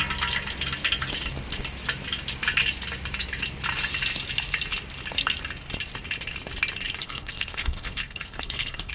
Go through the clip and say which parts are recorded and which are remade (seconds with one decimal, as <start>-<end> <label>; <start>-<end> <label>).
0.0-7.0 recorded; 7.0-8.9 remade